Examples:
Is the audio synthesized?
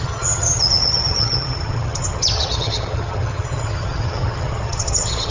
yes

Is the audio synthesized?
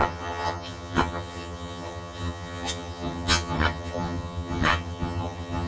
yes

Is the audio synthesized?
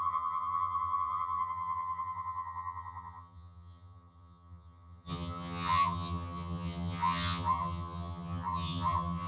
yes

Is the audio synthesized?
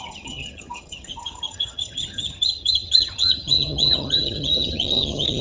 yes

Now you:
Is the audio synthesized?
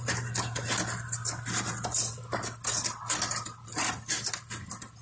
no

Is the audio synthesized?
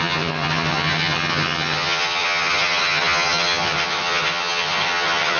yes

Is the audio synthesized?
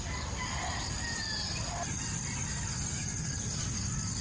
no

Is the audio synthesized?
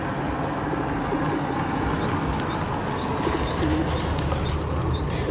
no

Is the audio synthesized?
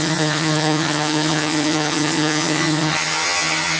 yes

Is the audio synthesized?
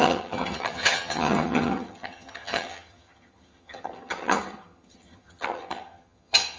yes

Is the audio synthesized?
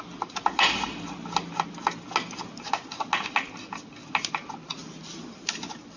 no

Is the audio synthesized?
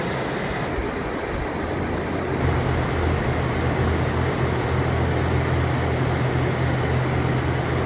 no